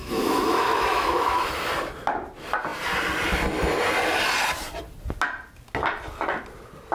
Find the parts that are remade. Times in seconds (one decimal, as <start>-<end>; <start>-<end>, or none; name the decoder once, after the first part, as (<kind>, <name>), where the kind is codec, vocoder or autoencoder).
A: 0.0-1.5 (autoencoder, DAC-VAE)